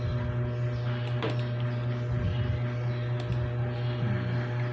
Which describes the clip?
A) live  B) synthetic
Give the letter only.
A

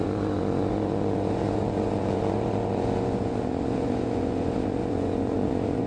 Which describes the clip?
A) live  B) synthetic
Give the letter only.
B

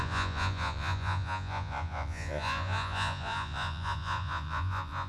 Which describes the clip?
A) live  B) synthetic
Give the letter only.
B